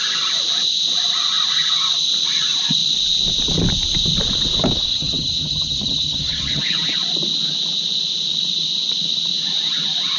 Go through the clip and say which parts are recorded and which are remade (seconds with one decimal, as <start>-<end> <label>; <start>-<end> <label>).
0.0-4.9 recorded; 4.9-6.6 remade; 6.6-10.2 recorded